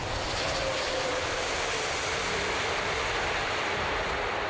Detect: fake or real fake